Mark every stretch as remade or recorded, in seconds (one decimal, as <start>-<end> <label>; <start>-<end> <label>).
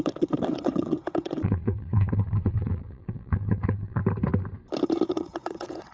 0.0-4.0 remade; 4.0-5.1 recorded; 5.1-5.9 remade